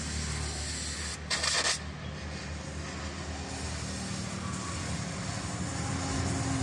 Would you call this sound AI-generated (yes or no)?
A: no